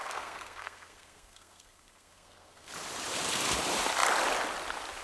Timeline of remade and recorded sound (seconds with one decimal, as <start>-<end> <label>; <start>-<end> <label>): 0.0-2.7 remade; 2.7-5.0 recorded